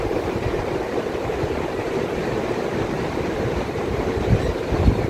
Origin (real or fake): fake